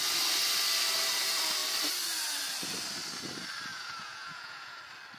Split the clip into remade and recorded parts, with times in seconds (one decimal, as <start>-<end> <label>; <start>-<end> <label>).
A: 0.0-3.7 recorded; 3.7-4.8 remade; 4.8-5.2 recorded